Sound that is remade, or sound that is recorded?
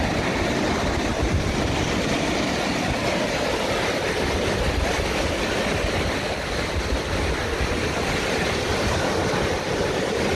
recorded